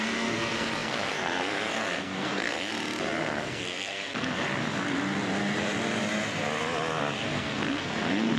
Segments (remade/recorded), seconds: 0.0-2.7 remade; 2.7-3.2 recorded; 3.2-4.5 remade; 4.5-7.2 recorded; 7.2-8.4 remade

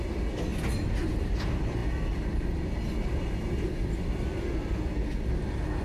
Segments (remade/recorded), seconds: 0.0-5.8 recorded